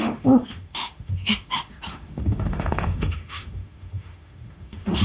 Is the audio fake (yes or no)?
yes